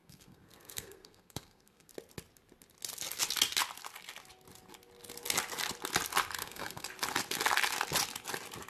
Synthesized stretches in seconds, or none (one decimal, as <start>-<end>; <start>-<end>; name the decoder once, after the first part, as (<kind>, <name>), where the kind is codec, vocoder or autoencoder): 0.0-1.9 (codec, SNAC); 6.4-6.9